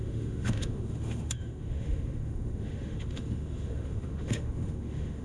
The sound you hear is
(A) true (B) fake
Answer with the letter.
B